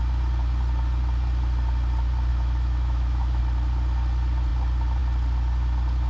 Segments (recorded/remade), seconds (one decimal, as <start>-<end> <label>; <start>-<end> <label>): 0.0-2.3 recorded; 2.3-3.4 remade; 3.4-6.1 recorded